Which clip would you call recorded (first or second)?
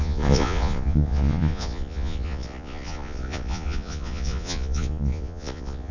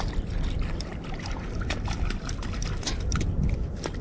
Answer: second